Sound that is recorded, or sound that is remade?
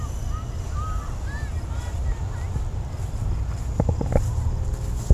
recorded